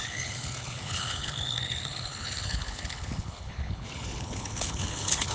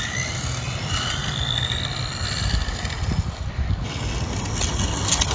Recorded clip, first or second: second